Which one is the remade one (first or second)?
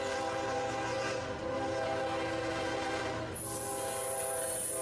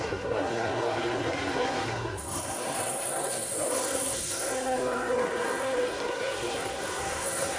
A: second